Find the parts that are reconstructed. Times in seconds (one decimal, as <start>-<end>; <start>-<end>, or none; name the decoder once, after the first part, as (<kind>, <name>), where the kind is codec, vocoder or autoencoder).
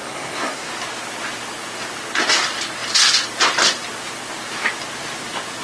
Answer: 0.0-0.7 (codec, SNAC)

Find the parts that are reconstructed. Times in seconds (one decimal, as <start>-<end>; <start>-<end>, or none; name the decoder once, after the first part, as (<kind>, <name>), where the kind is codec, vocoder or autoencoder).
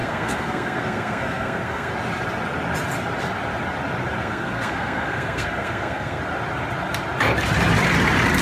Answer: 0.0-1.9 (codec, SNAC); 4.2-6.2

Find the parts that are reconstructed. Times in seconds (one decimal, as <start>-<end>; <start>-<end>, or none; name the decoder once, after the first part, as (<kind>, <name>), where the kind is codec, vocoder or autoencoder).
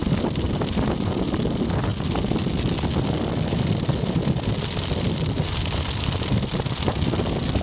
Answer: none